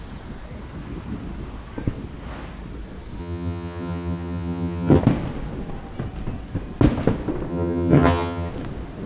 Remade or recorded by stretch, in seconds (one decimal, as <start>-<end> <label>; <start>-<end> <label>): 0.0-3.2 recorded; 3.2-5.0 remade; 5.0-7.5 recorded; 7.5-8.5 remade; 8.5-9.1 recorded